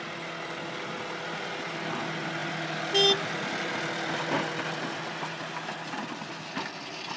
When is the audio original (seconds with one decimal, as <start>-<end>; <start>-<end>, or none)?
0.0-7.2